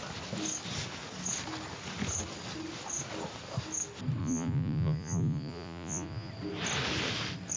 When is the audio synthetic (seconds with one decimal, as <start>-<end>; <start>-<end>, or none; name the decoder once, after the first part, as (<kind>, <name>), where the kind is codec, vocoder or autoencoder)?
4.2-6.3 (vocoder, Vocos)